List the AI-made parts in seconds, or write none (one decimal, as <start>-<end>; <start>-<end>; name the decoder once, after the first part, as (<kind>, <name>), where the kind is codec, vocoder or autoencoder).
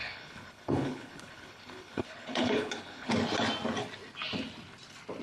0.0-3.1 (codec, HILCodec)